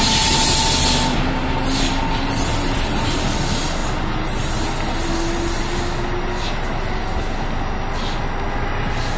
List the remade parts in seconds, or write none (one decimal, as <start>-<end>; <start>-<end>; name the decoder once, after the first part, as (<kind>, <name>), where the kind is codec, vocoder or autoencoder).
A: none